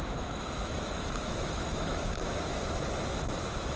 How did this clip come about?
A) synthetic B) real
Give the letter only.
A